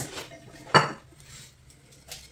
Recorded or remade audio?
recorded